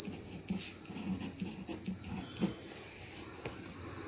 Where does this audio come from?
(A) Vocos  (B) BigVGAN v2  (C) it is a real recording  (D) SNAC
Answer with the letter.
C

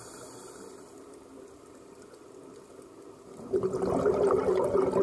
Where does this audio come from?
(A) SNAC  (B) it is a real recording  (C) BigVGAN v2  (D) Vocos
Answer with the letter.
B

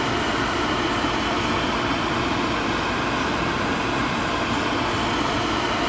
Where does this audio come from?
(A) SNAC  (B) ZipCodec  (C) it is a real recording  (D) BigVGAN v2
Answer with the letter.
C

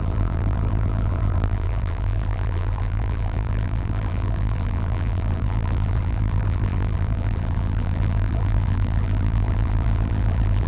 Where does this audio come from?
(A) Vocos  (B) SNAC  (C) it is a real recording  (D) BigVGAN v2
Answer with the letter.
D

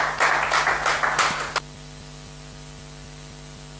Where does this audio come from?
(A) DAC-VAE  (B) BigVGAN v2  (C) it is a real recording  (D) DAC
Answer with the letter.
C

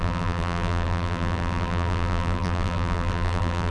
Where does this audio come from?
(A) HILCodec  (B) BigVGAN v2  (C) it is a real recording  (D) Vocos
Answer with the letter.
B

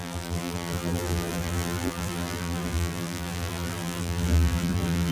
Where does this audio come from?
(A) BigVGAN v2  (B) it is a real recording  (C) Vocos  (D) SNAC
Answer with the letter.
A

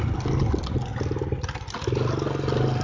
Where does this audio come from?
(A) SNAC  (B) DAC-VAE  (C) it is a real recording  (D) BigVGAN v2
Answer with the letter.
C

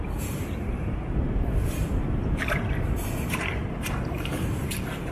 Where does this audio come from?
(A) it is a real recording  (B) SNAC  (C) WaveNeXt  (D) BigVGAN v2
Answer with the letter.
D